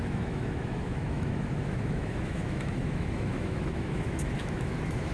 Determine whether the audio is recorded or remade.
remade